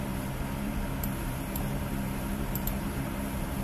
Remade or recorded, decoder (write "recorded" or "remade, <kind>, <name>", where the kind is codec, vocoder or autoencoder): remade, vocoder, BigVGAN v2